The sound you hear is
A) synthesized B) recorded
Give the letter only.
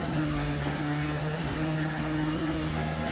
A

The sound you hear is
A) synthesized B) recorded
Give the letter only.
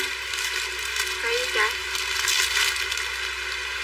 B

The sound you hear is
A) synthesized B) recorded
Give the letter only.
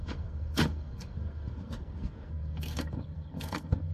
A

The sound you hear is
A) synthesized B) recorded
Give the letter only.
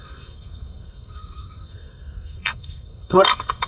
A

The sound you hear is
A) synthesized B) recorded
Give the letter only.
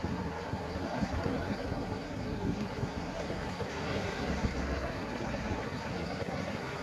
A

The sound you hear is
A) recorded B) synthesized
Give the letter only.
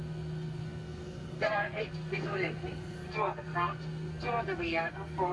B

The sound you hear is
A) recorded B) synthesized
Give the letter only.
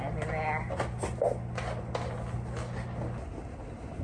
A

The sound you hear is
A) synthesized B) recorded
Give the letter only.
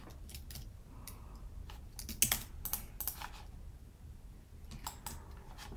B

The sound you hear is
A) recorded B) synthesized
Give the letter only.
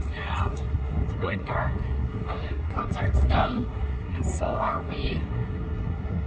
B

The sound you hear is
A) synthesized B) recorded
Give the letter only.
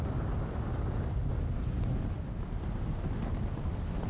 B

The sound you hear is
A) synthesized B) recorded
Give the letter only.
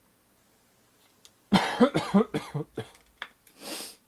B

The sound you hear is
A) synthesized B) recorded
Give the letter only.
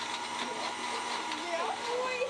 B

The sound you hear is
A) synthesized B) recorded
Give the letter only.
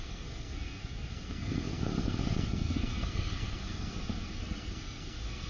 A